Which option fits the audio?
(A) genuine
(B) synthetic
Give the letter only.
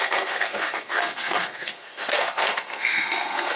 B